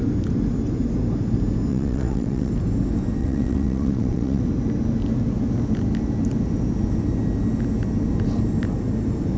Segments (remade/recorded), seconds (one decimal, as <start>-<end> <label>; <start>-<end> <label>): 0.0-1.7 recorded; 1.7-2.5 remade; 2.5-3.2 recorded; 3.2-4.4 remade; 4.4-9.4 recorded